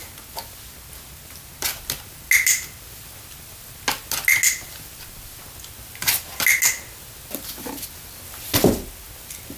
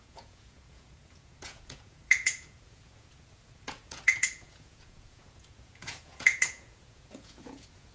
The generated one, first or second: second